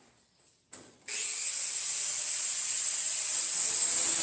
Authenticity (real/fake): real